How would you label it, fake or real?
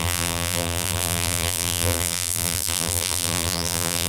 fake